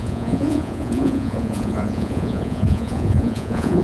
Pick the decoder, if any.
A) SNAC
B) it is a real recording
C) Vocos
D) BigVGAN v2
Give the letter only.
C